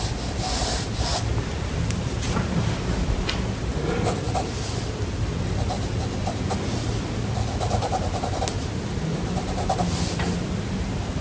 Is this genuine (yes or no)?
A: yes